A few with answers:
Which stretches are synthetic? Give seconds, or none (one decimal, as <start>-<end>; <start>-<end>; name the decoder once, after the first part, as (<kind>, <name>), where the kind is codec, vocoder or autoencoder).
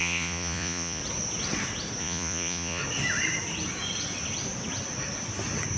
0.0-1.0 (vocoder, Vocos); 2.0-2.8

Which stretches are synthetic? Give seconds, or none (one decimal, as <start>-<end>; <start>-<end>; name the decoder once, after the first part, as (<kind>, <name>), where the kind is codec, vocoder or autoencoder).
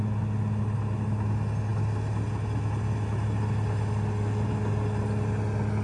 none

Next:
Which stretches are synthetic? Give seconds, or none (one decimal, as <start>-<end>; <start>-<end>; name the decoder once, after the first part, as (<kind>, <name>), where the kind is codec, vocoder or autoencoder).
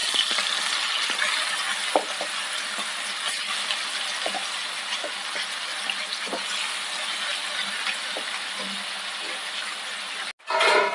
none